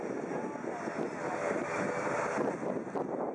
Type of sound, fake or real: real